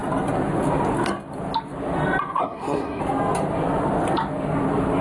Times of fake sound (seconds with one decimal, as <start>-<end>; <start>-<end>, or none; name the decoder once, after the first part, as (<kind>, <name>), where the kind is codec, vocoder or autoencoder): 2.4-3.0 (codec, SNAC)